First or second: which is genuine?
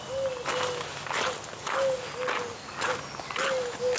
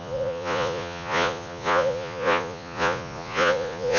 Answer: first